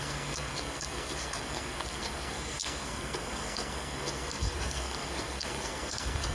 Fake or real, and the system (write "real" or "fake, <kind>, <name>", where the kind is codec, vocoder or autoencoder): fake, codec, SNAC